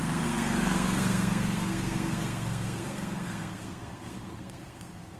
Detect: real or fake fake